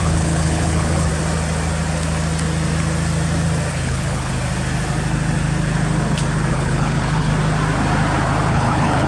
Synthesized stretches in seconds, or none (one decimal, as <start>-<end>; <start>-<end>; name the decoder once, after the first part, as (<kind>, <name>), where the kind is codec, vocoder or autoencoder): 0.0-1.1 (codec, HILCodec); 3.7-4.3; 6.5-7.3; 8.5-9.1

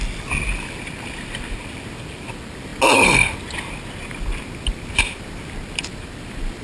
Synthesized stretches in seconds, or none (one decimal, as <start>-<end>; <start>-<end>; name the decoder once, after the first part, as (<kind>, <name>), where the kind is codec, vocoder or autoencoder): none

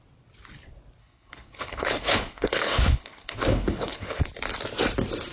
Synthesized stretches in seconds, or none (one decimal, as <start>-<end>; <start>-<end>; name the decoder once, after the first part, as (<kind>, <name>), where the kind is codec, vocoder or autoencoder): 1.0-4.2 (codec, HILCodec)

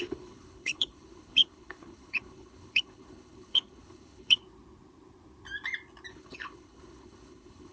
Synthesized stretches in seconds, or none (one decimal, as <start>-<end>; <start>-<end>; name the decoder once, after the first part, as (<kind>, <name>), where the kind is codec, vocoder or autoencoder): 0.0-4.4 (codec, HILCodec); 6.1-7.7

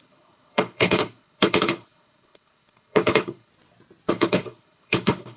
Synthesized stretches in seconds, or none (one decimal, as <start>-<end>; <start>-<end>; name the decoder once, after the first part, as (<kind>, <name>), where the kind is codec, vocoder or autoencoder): 0.0-3.5 (codec, HILCodec); 4.1-5.4

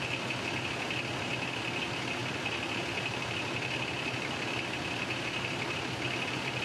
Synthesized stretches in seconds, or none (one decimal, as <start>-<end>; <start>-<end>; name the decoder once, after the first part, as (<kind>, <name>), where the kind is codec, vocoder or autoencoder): none

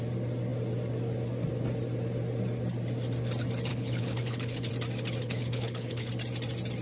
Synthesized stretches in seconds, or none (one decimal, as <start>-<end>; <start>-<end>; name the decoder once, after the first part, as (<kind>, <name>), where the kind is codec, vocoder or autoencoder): 3.7-4.7 (codec, HILCodec); 5.2-6.1